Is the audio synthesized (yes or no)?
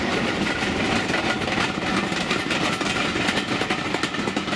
no